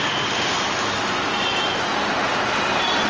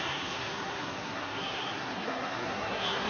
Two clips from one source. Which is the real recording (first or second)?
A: first